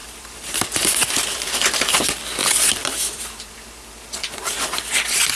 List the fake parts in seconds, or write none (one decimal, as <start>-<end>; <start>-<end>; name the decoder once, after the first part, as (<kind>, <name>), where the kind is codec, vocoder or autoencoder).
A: 0.0-2.0 (vocoder, BigVGAN v2); 2.4-4.8